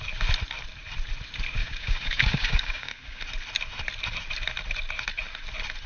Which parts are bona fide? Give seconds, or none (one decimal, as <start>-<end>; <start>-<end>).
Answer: 0.0-1.6; 3.2-5.9